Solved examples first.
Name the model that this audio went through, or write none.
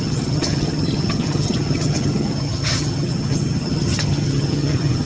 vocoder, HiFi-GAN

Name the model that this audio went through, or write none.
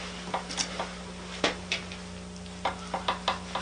none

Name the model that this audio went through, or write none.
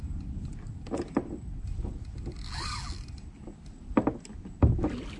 none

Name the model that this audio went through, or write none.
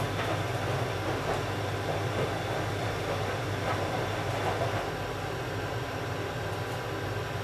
none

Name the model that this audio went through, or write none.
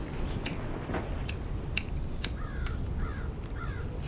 none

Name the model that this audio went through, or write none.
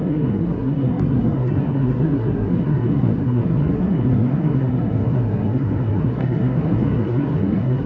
codec, SNAC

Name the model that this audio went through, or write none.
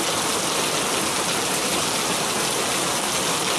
none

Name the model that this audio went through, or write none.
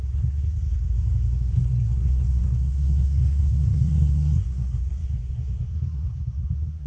codec, SNAC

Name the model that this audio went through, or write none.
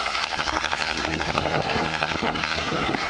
codec, SNAC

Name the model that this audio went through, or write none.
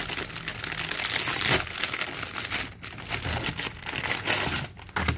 none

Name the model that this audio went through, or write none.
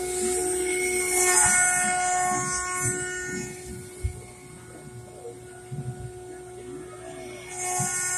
none